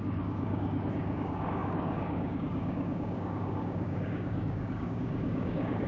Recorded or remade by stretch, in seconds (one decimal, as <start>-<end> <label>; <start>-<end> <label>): 0.0-5.9 remade